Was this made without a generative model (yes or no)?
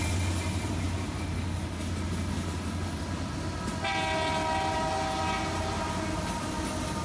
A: yes